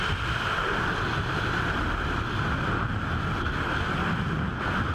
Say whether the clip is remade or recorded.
recorded